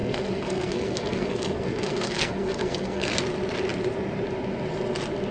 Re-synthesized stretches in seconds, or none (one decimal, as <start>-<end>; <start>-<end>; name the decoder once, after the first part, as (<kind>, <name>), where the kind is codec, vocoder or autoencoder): 0.0-3.2 (codec, SNAC)